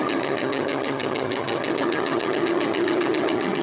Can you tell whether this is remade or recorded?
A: remade